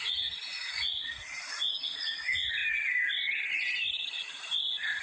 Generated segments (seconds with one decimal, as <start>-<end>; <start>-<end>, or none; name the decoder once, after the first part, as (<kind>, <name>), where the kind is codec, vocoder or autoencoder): 0.0-2.6 (vocoder, Vocos)